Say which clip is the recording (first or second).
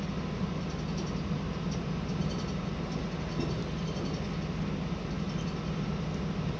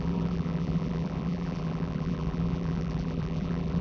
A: first